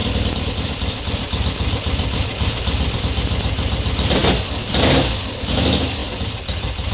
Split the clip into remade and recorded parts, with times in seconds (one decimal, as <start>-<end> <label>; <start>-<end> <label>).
0.0-3.0 remade; 3.0-6.0 recorded; 6.0-6.9 remade